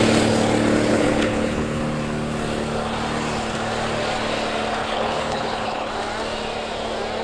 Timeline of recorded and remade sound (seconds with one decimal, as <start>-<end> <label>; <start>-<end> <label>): 0.0-0.9 recorded; 0.9-1.8 remade; 1.8-4.8 recorded; 4.8-5.9 remade; 5.9-7.2 recorded